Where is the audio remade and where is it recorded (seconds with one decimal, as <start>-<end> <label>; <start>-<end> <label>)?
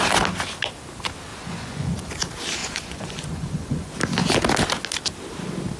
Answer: 0.0-1.3 recorded; 1.3-2.1 remade; 2.1-2.6 recorded; 2.6-3.9 remade; 3.9-5.8 recorded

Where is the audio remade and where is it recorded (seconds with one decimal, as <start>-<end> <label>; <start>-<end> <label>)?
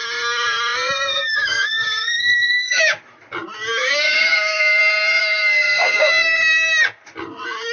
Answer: 0.0-1.1 recorded; 1.1-3.0 remade; 3.0-3.8 recorded; 3.8-4.8 remade; 4.8-5.2 recorded; 5.2-6.1 remade; 6.1-7.7 recorded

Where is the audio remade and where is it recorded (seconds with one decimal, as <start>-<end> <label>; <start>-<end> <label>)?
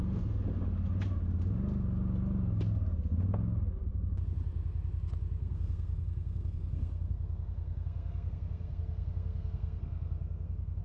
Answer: 0.0-5.4 recorded; 5.4-10.8 remade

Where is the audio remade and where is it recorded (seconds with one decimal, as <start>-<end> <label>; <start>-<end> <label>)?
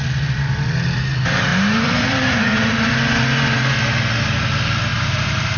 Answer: 0.0-1.5 recorded; 1.5-2.9 remade; 2.9-4.9 recorded; 4.9-5.6 remade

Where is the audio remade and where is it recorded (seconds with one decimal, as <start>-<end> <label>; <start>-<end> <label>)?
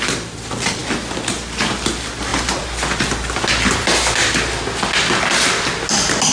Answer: 0.0-6.3 recorded